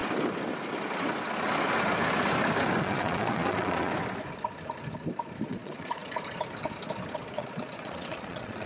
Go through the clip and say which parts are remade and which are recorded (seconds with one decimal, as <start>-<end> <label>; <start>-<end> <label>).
0.0-2.8 recorded; 2.8-3.9 remade; 3.9-5.5 recorded; 5.5-6.0 remade; 6.0-7.3 recorded; 7.3-8.7 remade